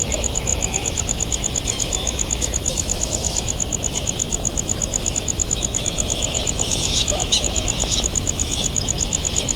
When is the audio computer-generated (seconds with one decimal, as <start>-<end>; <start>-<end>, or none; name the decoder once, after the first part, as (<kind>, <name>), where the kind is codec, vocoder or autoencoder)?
0.0-9.6 (autoencoder, DAC-VAE)